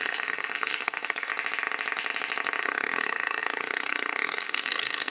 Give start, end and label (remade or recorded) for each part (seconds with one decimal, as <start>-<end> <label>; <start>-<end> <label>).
0.0-1.3 remade; 1.3-2.6 recorded; 2.6-5.1 remade